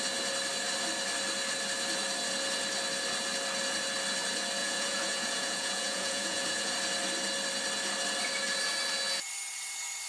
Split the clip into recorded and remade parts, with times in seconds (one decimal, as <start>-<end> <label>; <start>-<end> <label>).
0.0-4.6 recorded; 4.6-6.7 remade; 6.7-10.1 recorded